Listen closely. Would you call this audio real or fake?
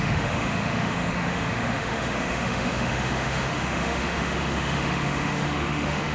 fake